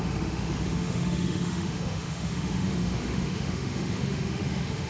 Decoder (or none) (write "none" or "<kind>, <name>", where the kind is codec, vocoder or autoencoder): autoencoder, DAC-VAE